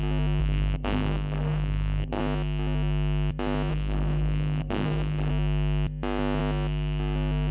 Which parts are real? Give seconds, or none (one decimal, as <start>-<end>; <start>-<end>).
0.0-0.4; 2.2-3.7; 5.3-7.5